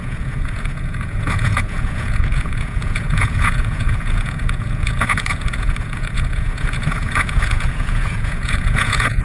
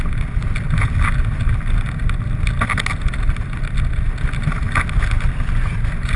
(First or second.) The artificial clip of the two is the first